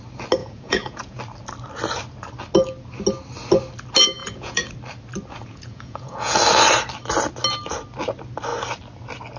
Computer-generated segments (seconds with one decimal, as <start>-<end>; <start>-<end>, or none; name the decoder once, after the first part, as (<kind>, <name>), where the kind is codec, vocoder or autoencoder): 0.4-1.2 (vocoder, Vocos); 4.2-4.7; 5.4-6.4